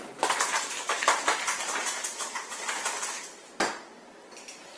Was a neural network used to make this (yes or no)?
no